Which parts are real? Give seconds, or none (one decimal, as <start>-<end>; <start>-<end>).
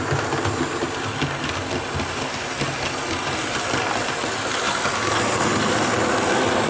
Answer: 0.0-6.7